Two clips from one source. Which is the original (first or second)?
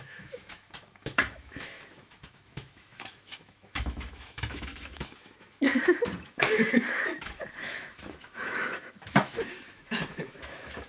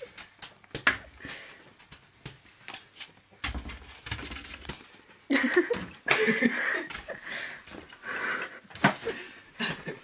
second